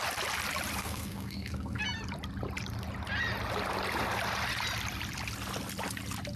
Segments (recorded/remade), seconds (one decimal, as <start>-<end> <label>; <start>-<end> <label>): 0.0-0.8 recorded; 0.8-1.8 remade; 1.8-6.4 recorded